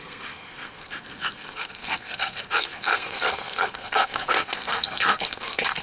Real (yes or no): no